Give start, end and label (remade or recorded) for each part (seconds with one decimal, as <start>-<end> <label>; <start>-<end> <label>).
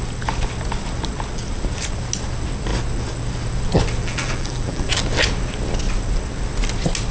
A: 0.0-4.0 recorded; 4.0-4.9 remade; 4.9-7.1 recorded